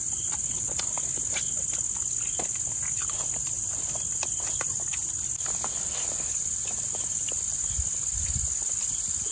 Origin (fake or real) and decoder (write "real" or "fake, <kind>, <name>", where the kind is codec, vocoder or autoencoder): real